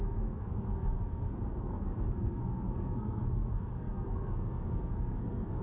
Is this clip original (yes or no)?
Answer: no